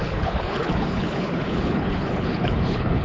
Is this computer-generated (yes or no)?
yes